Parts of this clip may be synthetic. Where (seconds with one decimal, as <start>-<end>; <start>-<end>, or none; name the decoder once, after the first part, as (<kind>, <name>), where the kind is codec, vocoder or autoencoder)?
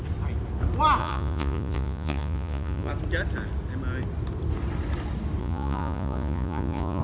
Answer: 1.0-2.9 (vocoder, Vocos); 5.4-7.0